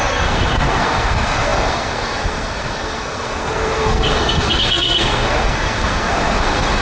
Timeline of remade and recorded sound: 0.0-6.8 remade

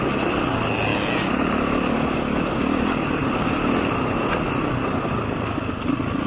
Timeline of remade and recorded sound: 0.0-6.3 recorded

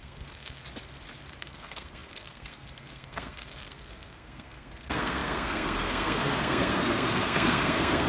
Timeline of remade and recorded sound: 0.0-0.6 remade; 0.6-1.4 recorded; 1.4-8.1 remade